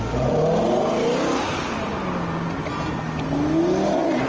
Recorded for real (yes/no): yes